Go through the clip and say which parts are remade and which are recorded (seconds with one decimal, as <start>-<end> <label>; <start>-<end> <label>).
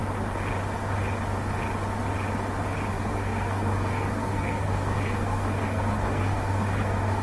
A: 0.0-2.9 recorded; 2.9-7.2 remade